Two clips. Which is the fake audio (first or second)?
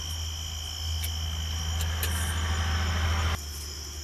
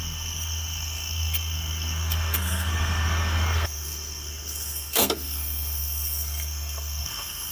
second